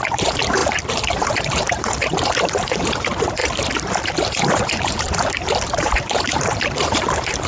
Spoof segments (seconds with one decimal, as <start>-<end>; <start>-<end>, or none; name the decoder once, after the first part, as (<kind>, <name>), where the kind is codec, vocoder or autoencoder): 0.0-3.4 (vocoder, BigVGAN v2); 4.1-7.5